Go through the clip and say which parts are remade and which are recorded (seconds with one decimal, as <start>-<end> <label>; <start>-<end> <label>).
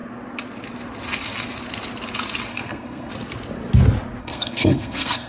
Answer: 0.0-2.5 recorded; 2.5-3.1 remade; 3.1-4.2 recorded; 4.2-5.3 remade